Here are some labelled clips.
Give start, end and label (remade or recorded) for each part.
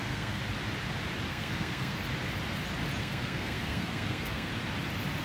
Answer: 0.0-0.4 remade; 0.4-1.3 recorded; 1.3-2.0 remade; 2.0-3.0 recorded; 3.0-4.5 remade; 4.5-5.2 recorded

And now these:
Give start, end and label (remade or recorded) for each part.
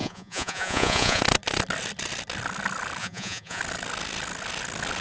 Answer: 0.0-1.2 remade; 1.2-3.0 recorded; 3.0-3.6 remade; 3.6-5.0 recorded